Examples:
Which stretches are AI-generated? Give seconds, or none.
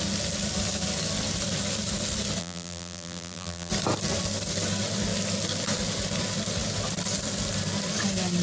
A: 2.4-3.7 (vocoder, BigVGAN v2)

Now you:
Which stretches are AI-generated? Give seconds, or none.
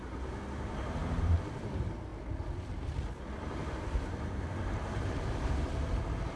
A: 0.0-2.1 (vocoder, BigVGAN v2); 3.1-5.7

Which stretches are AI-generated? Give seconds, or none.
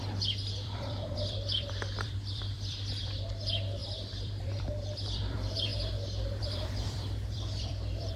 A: 0.0-5.7 (vocoder, BigVGAN v2); 6.4-8.2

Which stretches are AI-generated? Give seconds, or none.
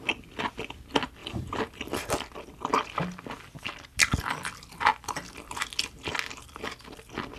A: 1.2-2.1 (vocoder, BigVGAN v2)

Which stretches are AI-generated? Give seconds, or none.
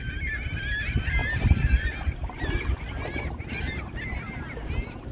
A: 1.2-4.3 (vocoder, BigVGAN v2)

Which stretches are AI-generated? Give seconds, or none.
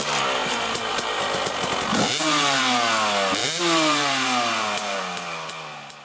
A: 1.9-2.6 (vocoder, BigVGAN v2); 3.4-5.0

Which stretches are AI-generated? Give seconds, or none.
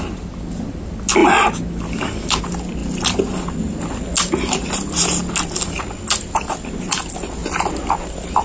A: none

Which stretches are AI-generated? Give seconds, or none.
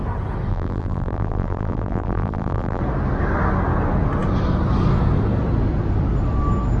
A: 0.5-2.8 (vocoder, BigVGAN v2)